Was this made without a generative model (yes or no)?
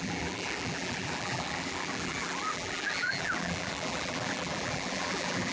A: no